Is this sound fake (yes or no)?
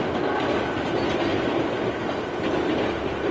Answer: no